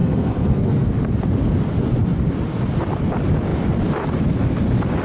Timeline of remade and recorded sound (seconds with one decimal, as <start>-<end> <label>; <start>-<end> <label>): 0.0-0.9 remade; 0.9-5.0 recorded